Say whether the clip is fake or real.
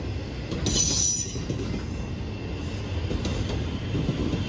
real